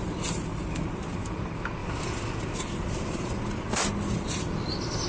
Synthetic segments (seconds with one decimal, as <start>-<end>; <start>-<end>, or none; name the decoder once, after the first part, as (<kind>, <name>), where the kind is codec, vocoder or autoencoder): 1.8-4.4 (vocoder, BigVGAN v2)